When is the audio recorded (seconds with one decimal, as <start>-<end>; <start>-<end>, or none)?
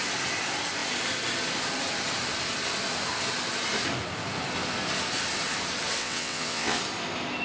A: 0.0-6.0; 6.8-7.4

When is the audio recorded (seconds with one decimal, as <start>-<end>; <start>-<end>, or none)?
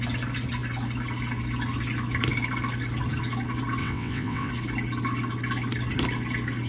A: 0.0-3.8; 4.5-6.7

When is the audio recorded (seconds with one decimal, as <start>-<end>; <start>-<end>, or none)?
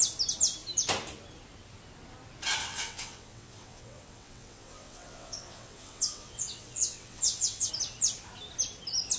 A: 0.0-2.6; 7.7-9.2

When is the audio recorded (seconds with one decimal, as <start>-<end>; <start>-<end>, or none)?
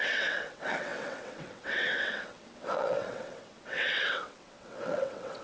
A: none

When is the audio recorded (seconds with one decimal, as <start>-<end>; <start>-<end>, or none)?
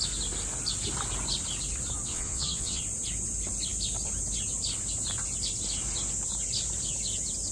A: 0.0-2.1; 2.8-7.5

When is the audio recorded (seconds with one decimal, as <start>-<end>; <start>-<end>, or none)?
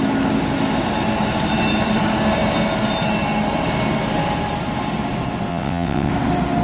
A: 0.0-5.5; 6.1-6.6